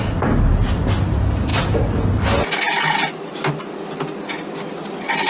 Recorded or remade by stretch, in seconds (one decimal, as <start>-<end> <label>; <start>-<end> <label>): 0.0-5.3 recorded